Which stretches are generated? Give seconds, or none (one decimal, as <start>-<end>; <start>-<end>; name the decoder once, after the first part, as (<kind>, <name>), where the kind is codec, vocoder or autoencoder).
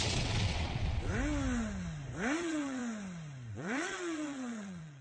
0.0-1.1 (vocoder, WaveNeXt); 2.4-2.8; 3.5-5.0